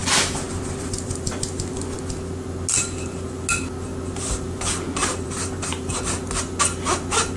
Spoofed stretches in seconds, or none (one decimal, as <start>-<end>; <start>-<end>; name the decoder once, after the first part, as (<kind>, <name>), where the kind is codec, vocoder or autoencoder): 0.0-1.7 (vocoder, BigVGAN v2); 5.0-6.0